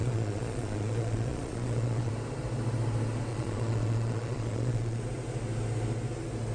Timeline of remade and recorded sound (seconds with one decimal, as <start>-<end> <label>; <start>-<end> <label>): 0.0-2.1 remade; 2.1-3.3 recorded; 3.3-5.0 remade; 5.0-6.5 recorded